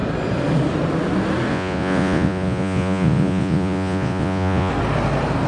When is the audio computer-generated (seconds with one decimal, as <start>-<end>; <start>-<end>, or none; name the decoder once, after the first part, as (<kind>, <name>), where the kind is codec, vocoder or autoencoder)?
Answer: 1.5-4.7 (vocoder, Vocos)